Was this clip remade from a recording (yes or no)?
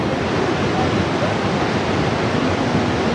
no